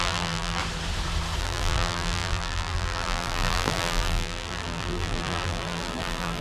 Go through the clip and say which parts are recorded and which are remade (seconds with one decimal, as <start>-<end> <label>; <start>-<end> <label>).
0.0-0.6 remade; 0.6-1.4 recorded; 1.4-6.4 remade